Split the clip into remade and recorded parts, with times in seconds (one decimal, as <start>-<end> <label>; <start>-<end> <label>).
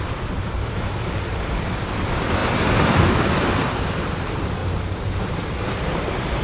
0.0-4.6 remade; 4.6-5.2 recorded; 5.2-6.4 remade